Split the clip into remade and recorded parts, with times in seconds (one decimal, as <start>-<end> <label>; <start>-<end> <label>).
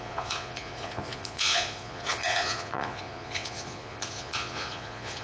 0.0-5.2 remade